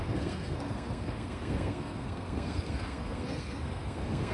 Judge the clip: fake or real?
fake